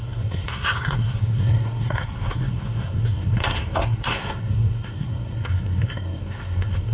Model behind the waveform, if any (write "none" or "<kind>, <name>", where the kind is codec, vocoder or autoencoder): codec, SNAC